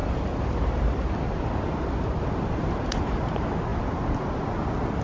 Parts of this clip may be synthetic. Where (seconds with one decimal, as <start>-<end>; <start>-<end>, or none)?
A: none